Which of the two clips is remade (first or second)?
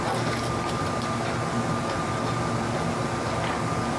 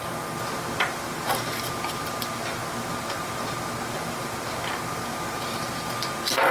second